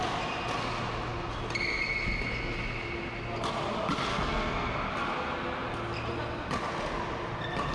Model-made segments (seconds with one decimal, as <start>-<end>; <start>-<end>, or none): 4.1-4.7